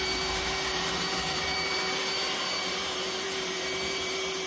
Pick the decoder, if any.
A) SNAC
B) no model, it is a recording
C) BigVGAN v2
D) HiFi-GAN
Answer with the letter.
C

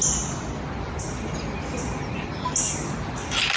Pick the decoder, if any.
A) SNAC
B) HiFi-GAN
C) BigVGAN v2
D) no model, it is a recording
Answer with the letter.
D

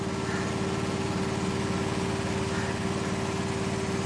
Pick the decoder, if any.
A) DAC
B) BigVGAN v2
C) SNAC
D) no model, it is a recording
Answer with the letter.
D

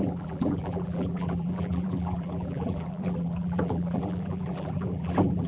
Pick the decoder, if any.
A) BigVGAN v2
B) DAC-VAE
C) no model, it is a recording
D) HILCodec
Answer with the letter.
A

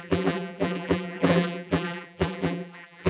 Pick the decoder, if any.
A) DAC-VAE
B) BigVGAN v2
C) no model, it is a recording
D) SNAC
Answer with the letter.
B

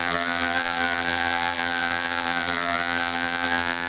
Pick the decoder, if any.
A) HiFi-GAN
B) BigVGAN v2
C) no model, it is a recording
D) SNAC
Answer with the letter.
B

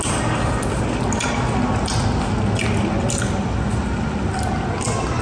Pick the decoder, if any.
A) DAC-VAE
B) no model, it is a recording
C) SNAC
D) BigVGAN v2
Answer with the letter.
B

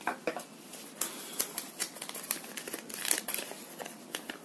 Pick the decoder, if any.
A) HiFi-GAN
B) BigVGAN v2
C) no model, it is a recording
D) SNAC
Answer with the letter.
B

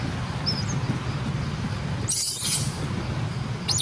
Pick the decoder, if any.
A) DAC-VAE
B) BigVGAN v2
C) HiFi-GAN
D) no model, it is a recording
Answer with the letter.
D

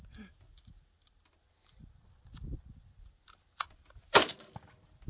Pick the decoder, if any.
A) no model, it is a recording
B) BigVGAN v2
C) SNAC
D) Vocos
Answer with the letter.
B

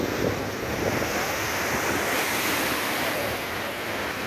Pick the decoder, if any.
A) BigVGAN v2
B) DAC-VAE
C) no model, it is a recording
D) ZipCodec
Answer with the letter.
C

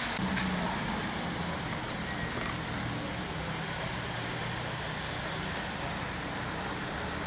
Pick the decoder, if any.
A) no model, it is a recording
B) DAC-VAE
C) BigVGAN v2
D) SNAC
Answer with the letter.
A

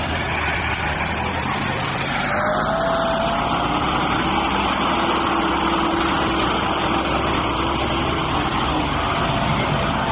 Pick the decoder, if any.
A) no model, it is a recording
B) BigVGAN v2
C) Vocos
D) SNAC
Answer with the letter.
A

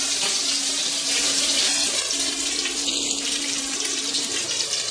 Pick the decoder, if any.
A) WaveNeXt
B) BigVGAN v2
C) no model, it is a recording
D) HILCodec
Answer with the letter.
B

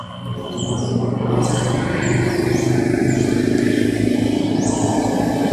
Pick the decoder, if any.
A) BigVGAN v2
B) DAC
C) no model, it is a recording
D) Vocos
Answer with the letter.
C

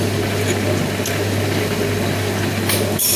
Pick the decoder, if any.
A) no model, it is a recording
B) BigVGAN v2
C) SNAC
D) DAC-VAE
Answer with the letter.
A